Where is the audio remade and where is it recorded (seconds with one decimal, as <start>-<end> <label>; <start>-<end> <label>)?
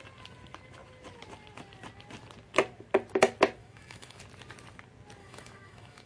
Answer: 0.0-3.6 recorded; 3.6-4.2 remade; 4.2-5.2 recorded; 5.2-6.1 remade